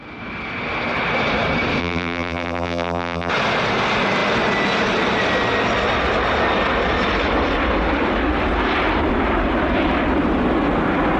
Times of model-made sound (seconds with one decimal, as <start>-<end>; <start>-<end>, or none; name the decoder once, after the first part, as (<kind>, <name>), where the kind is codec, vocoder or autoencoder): 1.8-3.3 (vocoder, BigVGAN v2)